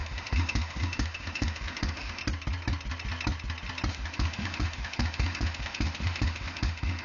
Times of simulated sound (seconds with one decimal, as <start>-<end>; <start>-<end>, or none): 0.0-2.2; 3.9-7.0